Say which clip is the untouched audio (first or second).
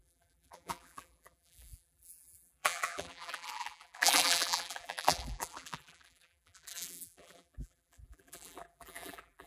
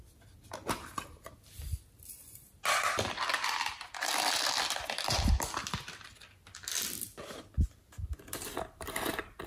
second